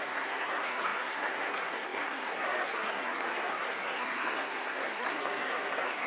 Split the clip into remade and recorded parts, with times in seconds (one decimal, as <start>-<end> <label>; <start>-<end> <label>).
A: 0.0-6.1 remade